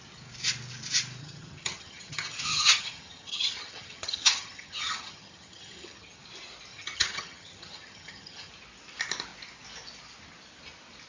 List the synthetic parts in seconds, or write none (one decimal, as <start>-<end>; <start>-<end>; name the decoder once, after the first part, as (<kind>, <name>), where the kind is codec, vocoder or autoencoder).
1.2-6.2 (vocoder, HiFi-GAN); 6.7-8.5